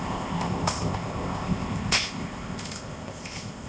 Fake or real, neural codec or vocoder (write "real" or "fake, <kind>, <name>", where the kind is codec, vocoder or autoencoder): fake, codec, ZipCodec